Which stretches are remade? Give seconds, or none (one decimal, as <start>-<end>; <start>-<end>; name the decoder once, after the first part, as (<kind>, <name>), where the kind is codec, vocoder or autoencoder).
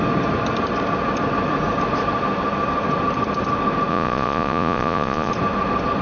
3.9-5.3 (vocoder, Vocos)